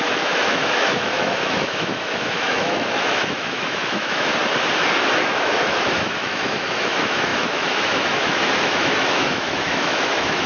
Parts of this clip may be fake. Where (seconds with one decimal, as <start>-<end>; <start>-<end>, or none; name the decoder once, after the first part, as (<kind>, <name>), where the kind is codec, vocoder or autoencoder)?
0.0-4.3 (autoencoder, DAC-VAE); 5.2-10.5